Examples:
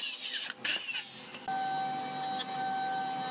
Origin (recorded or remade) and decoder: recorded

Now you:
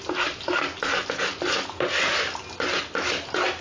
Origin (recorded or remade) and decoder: recorded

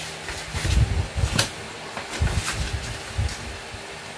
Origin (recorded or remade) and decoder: recorded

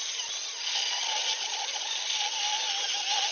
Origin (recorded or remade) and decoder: recorded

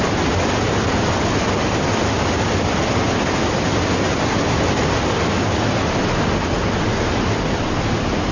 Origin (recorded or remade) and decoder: recorded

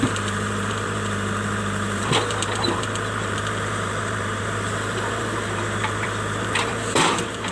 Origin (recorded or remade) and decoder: remade, vocoder, BigVGAN v2